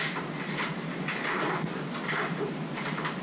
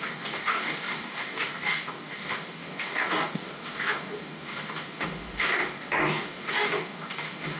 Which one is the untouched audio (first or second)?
first